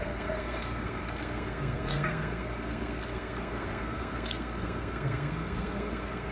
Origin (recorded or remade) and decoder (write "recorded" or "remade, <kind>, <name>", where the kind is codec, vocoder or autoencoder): remade, codec, SNAC